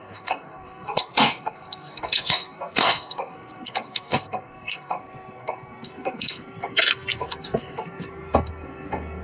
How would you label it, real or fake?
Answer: fake